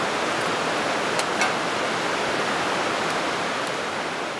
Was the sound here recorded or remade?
recorded